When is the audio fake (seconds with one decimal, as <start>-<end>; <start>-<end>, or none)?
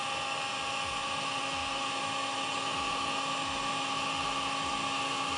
none